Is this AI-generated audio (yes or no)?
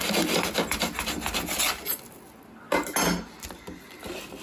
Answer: no